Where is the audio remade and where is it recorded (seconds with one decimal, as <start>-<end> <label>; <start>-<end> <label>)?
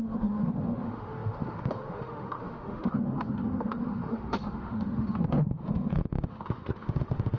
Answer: 0.0-7.4 remade